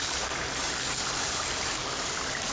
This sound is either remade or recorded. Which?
recorded